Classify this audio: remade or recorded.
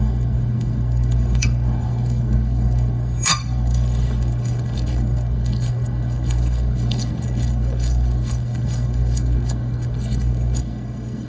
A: remade